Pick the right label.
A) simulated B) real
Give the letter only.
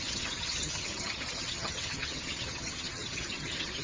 A